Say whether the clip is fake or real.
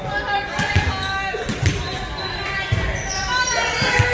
real